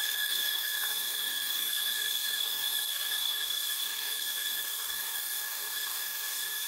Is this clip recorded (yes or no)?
no